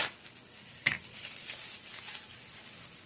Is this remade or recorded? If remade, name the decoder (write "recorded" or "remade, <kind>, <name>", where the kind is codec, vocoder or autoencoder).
recorded